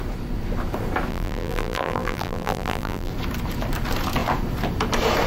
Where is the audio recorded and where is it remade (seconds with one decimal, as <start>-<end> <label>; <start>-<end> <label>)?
0.0-1.1 recorded; 1.1-3.1 remade; 3.1-5.3 recorded